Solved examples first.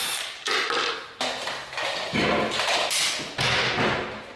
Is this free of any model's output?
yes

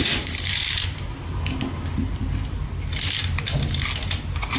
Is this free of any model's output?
yes